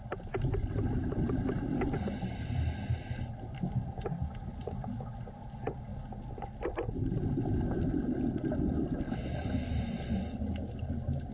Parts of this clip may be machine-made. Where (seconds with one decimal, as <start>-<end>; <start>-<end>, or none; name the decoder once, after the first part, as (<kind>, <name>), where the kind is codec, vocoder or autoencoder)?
none